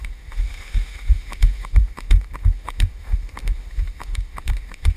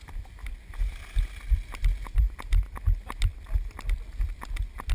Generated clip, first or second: first